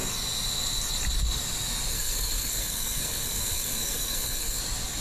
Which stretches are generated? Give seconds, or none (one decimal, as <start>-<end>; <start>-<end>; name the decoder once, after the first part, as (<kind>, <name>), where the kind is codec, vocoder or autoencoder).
1.9-4.6 (codec, SNAC)